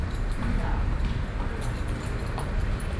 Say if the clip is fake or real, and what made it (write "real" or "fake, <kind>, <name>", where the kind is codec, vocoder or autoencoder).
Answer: real